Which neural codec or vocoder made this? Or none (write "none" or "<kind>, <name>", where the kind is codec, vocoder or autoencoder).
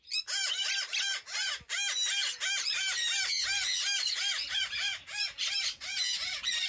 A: none